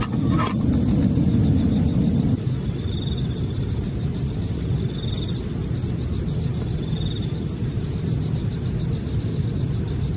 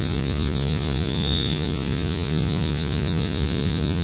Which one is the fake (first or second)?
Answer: second